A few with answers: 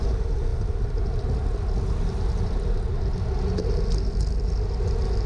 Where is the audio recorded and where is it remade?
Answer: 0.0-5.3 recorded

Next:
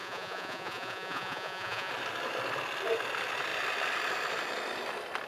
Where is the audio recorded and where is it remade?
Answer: 0.0-1.9 remade; 1.9-5.3 recorded

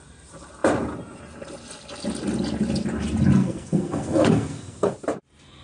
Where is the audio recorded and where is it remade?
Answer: 0.0-3.4 recorded; 3.4-4.9 remade; 4.9-5.6 recorded

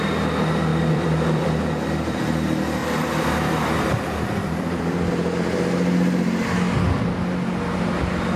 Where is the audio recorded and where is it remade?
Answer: 0.0-0.7 recorded; 0.7-2.2 remade; 2.2-2.8 recorded; 2.8-5.1 remade; 5.1-8.4 recorded

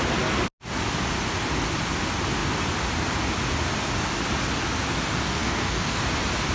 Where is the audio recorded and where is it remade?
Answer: 0.0-5.3 recorded; 5.3-6.0 remade; 6.0-6.5 recorded

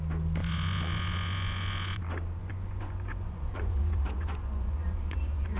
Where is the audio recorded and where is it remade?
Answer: 0.0-0.4 recorded; 0.4-2.0 remade; 2.0-2.4 recorded; 2.4-5.6 remade